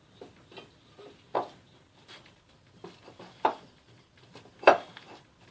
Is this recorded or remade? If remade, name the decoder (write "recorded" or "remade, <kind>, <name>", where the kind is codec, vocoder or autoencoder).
remade, vocoder, BigVGAN v2